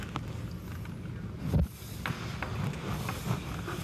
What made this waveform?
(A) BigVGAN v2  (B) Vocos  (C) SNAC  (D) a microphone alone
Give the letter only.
D